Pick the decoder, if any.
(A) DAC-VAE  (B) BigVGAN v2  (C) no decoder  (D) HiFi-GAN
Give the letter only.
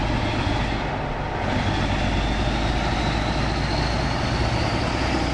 C